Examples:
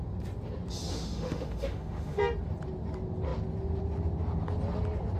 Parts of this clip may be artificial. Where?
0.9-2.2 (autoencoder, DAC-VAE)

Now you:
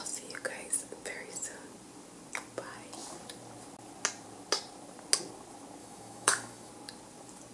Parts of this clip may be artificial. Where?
5.8-6.7 (autoencoder, DAC-VAE)

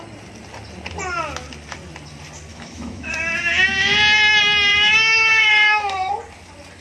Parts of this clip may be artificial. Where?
2.5-3.1 (autoencoder, DAC-VAE); 4.7-6.2

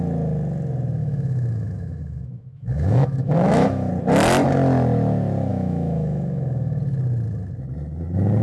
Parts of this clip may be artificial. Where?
1.0-3.9 (autoencoder, DAC-VAE); 5.5-6.8

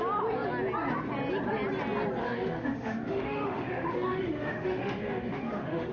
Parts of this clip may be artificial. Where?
2.2-5.9 (autoencoder, DAC-VAE)

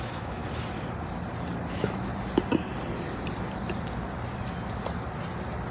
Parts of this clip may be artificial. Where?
0.0-0.4 (autoencoder, DAC-VAE); 1.7-2.1

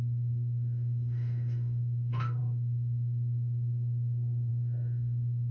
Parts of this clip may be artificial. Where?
0.0-5.5 (autoencoder, DAC-VAE)